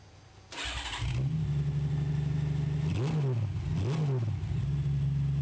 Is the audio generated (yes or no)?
no